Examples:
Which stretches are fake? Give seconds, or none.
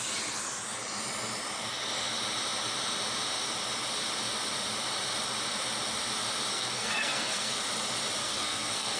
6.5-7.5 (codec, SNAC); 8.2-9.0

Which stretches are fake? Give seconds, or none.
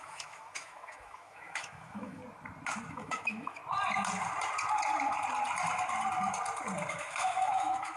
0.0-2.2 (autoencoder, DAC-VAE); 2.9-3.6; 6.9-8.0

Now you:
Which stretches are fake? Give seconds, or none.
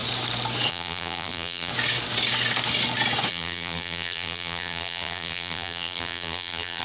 0.7-1.7 (vocoder, BigVGAN v2); 3.3-6.8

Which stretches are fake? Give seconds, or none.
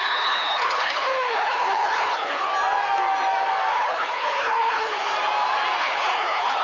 0.0-2.5 (codec, HILCodec); 3.7-5.1; 5.8-6.6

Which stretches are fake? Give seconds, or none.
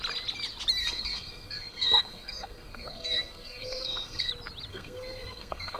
0.8-4.3 (codec, SNAC); 4.7-5.8